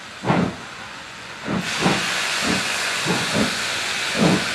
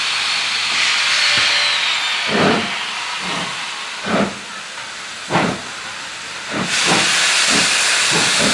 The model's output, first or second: first